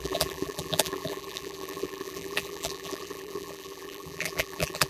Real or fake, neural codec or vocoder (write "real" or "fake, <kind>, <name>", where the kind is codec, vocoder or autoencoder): fake, vocoder, BigVGAN v2